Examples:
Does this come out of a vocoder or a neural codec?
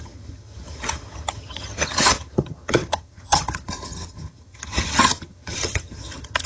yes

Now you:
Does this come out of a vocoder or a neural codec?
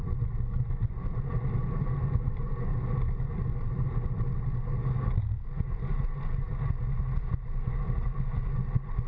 no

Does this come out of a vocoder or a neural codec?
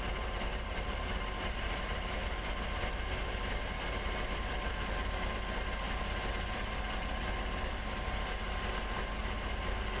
no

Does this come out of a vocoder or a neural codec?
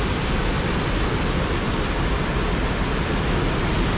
no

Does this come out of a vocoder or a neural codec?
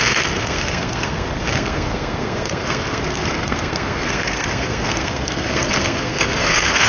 yes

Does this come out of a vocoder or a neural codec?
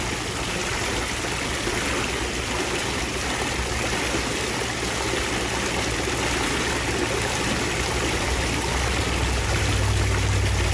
no